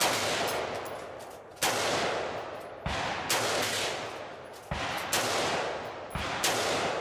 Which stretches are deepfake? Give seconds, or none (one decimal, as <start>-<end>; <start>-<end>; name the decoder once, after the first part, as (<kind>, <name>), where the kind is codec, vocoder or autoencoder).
none